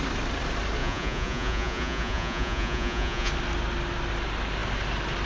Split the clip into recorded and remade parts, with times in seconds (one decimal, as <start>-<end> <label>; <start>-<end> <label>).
0.0-0.8 recorded; 0.8-3.3 remade; 3.3-5.3 recorded

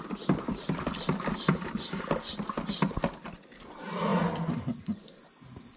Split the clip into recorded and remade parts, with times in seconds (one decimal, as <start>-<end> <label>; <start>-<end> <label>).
0.0-5.8 recorded